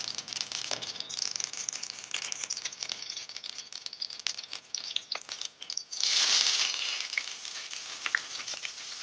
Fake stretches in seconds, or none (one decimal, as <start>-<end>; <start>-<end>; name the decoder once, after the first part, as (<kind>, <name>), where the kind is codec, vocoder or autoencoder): none